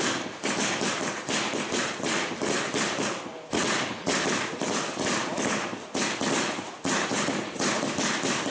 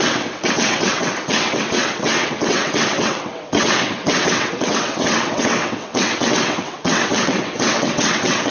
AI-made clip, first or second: second